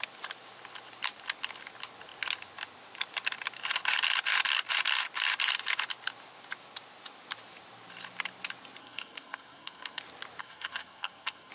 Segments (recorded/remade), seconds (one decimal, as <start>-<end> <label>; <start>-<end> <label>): 0.0-8.8 recorded; 8.8-10.0 remade; 10.0-10.4 recorded; 10.4-11.5 remade